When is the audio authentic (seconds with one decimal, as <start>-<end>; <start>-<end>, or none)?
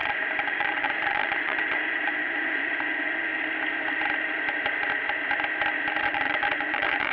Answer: 3.3-6.0